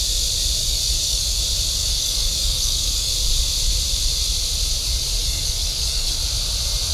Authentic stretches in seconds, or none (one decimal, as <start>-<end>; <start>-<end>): 0.0-0.6; 1.4-1.8; 3.1-5.2; 6.2-6.9